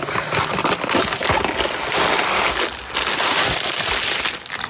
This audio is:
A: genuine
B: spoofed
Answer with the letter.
A